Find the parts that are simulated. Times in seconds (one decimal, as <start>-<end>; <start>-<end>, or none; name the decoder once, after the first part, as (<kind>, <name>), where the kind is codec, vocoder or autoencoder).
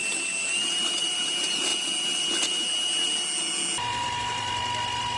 none